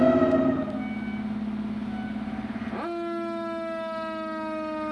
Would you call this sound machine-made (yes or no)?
no